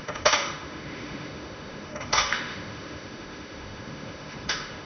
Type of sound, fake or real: fake